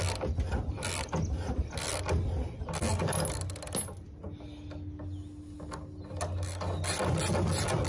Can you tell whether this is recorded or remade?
recorded